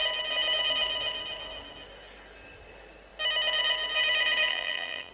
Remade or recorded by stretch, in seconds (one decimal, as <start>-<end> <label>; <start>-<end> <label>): 0.0-4.5 recorded; 4.5-5.1 remade